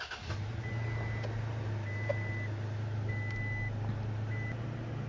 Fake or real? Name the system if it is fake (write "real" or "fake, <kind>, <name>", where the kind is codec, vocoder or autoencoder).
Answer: real